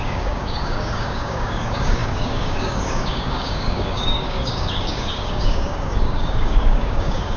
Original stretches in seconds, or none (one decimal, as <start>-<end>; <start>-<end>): none